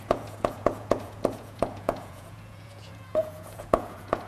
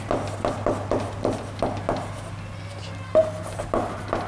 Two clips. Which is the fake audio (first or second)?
first